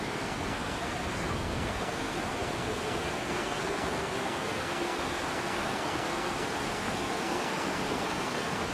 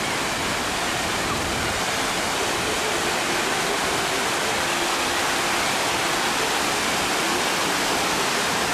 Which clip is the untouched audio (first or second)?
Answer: second